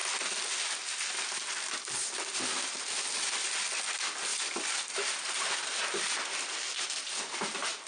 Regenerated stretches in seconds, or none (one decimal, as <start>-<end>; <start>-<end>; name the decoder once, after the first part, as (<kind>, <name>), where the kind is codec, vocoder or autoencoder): none

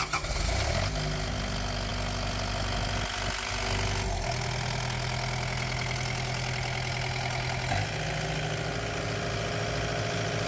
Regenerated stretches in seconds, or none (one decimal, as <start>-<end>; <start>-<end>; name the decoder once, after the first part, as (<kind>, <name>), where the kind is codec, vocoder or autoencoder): none

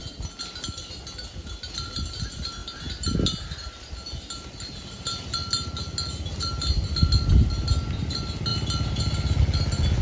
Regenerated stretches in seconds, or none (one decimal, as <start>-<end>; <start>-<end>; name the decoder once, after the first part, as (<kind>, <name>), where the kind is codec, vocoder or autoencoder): none

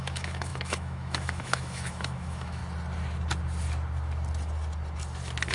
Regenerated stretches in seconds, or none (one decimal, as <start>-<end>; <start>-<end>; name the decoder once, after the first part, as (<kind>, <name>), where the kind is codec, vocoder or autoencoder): 0.0-2.6 (autoencoder, DAC-VAE)

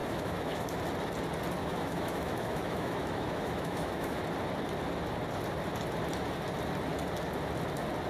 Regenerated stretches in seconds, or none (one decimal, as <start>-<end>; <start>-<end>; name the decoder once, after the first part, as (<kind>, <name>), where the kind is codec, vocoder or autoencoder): 0.0-0.8 (autoencoder, DAC-VAE); 1.6-4.2